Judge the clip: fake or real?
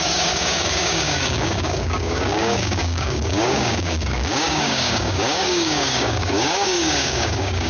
fake